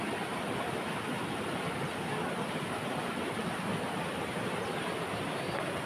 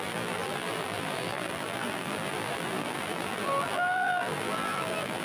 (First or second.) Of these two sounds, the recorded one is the first